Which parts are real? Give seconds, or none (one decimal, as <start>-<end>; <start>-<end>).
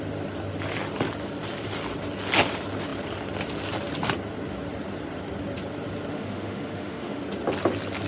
0.0-6.1; 7.2-8.1